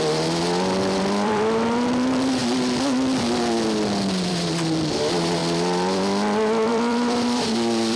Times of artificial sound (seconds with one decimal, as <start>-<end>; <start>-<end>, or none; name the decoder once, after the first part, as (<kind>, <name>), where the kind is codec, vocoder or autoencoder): 0.0-2.4 (vocoder, BigVGAN v2); 4.3-8.0

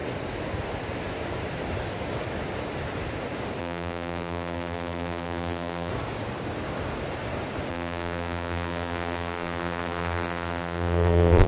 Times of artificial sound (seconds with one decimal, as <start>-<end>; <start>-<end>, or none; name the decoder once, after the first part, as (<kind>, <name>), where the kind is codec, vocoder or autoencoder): 3.6-5.9 (vocoder, BigVGAN v2); 7.7-11.5